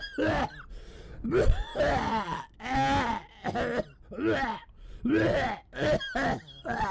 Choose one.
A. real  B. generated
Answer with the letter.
A